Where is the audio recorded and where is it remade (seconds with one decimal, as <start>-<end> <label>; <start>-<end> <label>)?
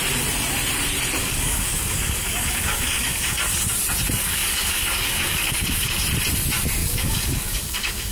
0.0-1.2 recorded; 1.2-3.4 remade; 3.4-4.2 recorded; 4.2-6.0 remade; 6.0-6.8 recorded; 6.8-8.1 remade